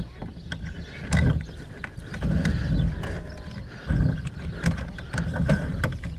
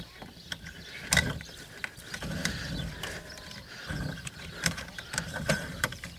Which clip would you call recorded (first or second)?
first